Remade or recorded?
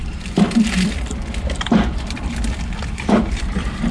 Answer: remade